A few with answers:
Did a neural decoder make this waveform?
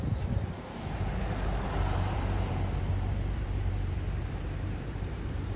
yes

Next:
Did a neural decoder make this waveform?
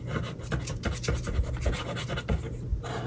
no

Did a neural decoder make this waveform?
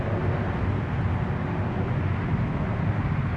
no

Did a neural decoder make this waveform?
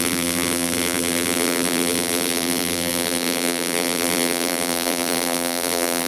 yes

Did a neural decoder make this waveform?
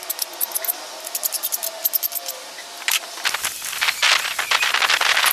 no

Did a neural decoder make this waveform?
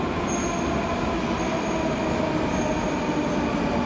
no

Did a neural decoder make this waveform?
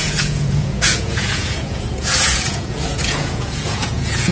yes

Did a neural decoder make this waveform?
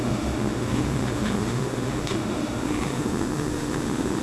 yes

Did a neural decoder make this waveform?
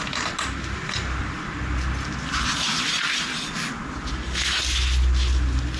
no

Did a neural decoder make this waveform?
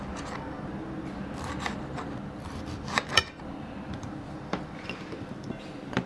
yes